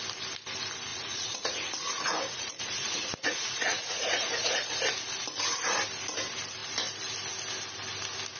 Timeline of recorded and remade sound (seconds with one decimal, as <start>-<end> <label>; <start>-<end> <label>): 0.0-0.9 recorded; 0.9-4.7 remade; 4.7-8.4 recorded